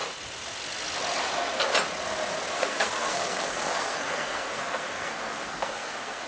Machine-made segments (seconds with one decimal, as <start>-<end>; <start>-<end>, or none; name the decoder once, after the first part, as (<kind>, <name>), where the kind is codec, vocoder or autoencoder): 2.5-6.3 (codec, SNAC)